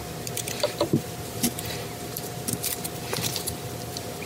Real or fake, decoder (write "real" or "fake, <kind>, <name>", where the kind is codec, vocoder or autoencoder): fake, vocoder, BigVGAN v2